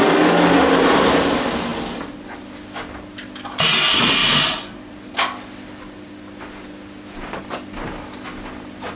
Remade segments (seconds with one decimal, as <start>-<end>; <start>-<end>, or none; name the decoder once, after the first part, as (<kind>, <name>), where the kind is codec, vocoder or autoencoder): none